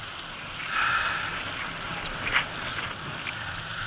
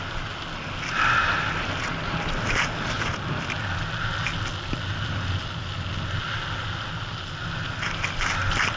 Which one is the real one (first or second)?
second